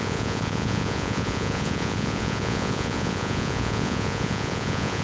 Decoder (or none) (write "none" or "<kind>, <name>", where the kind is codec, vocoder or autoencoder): vocoder, Vocos